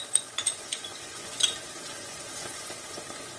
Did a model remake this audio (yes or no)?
yes